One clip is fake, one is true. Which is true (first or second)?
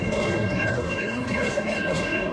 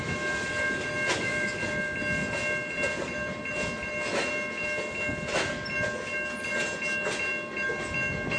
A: second